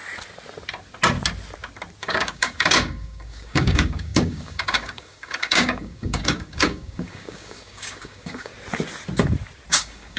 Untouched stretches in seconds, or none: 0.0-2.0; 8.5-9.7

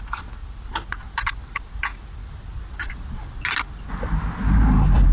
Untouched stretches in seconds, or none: 0.0-5.1

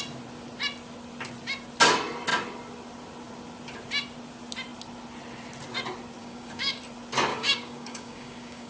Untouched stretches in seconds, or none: 0.0-6.2; 6.8-7.3

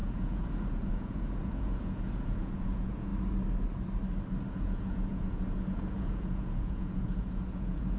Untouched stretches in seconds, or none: 3.1-4.5

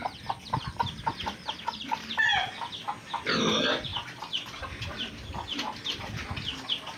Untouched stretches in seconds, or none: 0.0-7.0